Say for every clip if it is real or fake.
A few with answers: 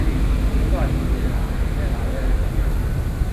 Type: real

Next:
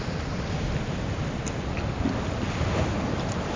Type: real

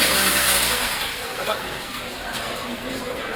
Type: fake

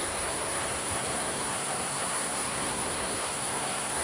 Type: fake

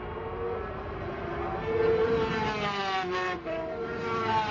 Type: real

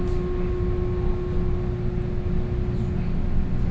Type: real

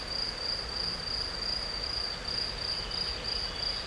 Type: real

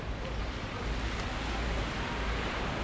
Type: real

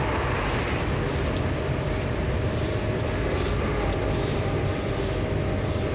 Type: real